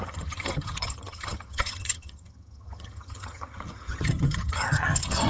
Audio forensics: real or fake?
fake